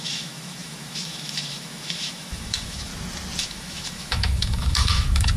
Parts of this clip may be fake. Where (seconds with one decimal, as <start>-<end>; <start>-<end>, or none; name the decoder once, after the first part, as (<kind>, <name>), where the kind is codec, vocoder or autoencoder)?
0.0-2.9 (autoencoder, DAC-VAE); 3.4-5.4